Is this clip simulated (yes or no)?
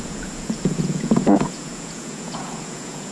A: yes